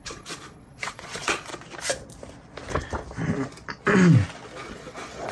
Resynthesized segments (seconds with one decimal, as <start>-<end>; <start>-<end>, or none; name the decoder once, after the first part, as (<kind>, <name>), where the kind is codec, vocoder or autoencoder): 0.0-1.5 (vocoder, Vocos); 4.7-5.3